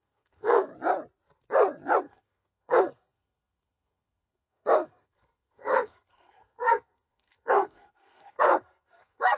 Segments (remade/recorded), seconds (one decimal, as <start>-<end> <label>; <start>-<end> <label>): 0.0-0.7 remade; 0.7-2.0 recorded; 2.0-9.4 remade